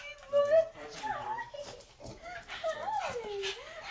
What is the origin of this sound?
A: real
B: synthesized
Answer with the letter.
B